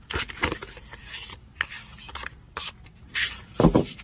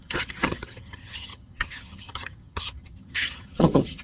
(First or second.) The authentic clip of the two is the first